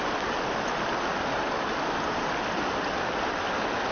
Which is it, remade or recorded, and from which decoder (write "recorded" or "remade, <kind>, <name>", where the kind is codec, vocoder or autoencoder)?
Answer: recorded